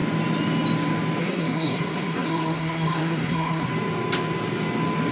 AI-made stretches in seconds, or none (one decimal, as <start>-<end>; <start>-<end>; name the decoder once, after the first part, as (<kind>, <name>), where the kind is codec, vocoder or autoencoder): 1.2-3.7 (codec, SNAC)